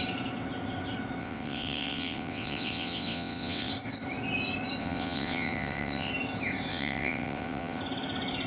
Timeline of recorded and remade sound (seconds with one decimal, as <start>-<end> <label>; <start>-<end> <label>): 0.0-1.2 recorded; 1.2-3.7 remade; 3.7-4.8 recorded; 4.8-6.1 remade; 6.1-6.7 recorded; 6.7-7.8 remade; 7.8-8.5 recorded